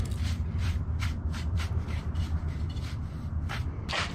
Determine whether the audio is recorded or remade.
remade